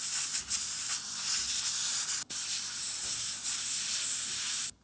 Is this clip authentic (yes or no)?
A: yes